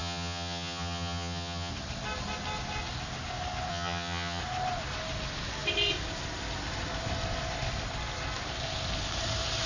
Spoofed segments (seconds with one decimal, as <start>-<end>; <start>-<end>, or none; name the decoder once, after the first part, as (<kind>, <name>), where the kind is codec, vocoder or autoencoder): 0.0-1.7 (vocoder, HiFi-GAN); 3.7-4.4